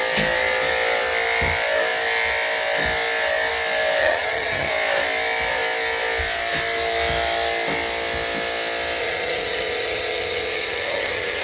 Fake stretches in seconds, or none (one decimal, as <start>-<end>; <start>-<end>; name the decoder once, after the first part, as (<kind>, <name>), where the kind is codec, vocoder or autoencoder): 4.0-4.7 (vocoder, HiFi-GAN); 9.0-11.4

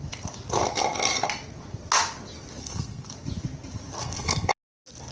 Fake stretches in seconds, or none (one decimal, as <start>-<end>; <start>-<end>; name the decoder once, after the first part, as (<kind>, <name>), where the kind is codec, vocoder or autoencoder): 2.6-3.1 (codec, SNAC); 4.0-4.5